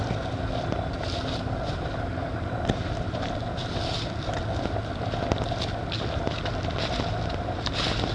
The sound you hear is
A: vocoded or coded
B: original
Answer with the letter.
B